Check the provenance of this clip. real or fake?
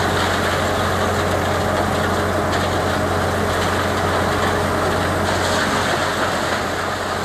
real